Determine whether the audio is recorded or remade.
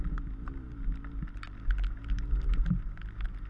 recorded